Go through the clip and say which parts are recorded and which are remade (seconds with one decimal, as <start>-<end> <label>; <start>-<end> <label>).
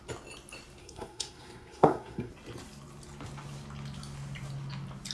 0.0-0.8 recorded; 0.8-2.3 remade; 2.3-5.1 recorded